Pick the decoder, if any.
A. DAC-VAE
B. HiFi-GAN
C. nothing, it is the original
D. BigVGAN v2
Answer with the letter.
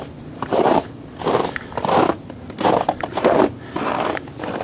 C